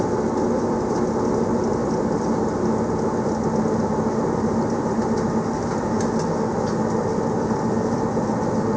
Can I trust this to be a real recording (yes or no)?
yes